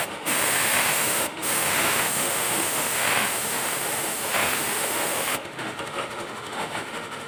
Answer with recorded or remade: remade